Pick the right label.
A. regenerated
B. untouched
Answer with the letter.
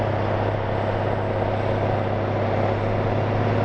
B